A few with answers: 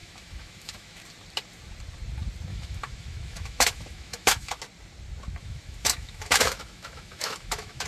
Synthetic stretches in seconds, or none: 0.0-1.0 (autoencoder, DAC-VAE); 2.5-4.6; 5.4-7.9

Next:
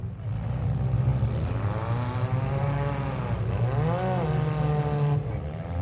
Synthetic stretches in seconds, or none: none